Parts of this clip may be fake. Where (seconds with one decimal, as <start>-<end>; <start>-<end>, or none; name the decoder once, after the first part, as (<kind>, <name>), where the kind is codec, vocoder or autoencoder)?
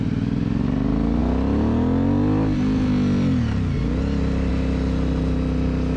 none